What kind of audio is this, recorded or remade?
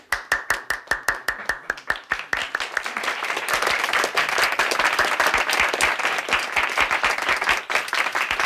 recorded